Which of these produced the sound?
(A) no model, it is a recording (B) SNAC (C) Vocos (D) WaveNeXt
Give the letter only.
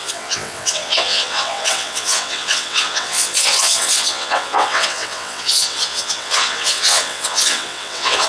D